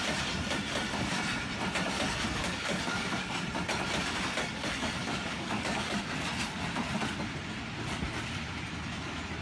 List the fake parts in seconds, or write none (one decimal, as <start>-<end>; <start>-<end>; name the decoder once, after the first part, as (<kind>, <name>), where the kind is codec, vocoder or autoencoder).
2.4-3.4 (codec, DAC); 4.6-6.0